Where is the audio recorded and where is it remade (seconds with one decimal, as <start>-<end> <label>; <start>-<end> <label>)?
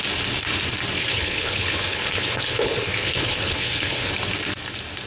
0.0-1.0 recorded; 1.0-4.1 remade; 4.1-5.1 recorded